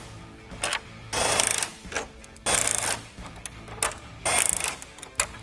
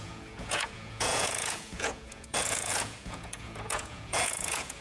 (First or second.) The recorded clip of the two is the first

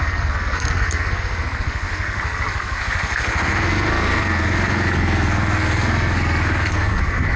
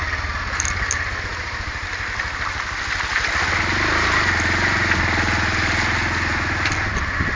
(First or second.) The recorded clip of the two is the second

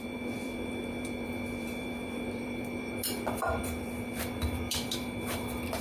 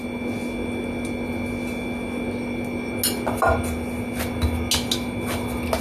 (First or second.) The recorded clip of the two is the second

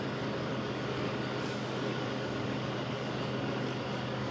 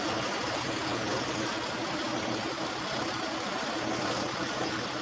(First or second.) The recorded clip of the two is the second